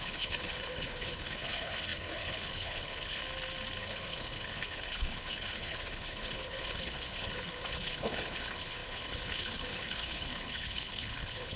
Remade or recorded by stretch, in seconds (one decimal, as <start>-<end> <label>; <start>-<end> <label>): 0.0-3.2 remade; 3.2-3.8 recorded; 3.8-11.6 remade